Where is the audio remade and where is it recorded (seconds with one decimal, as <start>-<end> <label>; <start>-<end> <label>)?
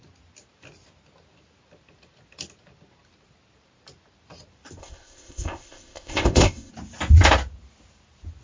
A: 0.0-4.8 recorded; 4.8-6.7 remade; 6.7-8.4 recorded